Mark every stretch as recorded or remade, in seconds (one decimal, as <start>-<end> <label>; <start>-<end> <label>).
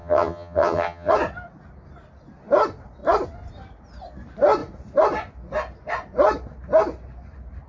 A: 0.0-1.1 remade; 1.1-7.7 recorded